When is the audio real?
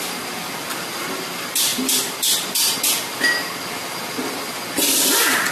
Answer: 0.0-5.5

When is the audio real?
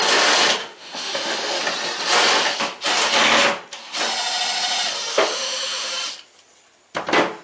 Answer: 0.0-0.6; 1.6-5.1; 5.9-7.4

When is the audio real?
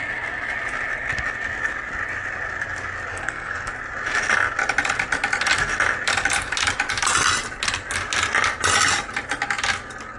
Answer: 0.0-3.1; 3.7-10.2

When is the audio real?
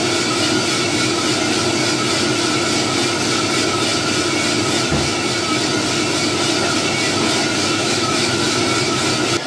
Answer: 0.0-7.8; 8.6-9.5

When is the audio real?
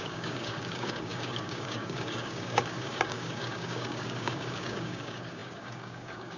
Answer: none